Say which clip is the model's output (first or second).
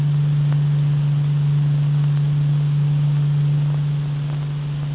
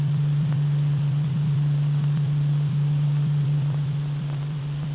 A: second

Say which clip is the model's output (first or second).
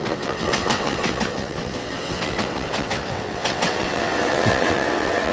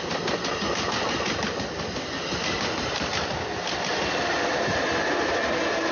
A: first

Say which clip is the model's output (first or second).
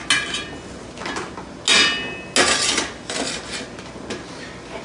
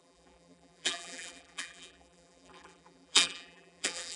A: second